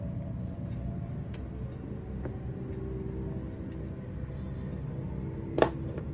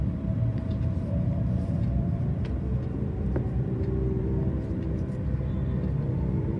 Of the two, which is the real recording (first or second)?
first